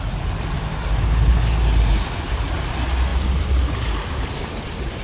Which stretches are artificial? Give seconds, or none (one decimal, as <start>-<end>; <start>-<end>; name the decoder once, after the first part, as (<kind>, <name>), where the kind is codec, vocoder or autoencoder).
0.7-1.4 (vocoder, BigVGAN v2); 3.1-5.0